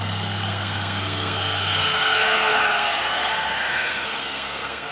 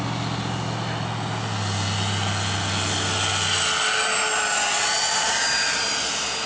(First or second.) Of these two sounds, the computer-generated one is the first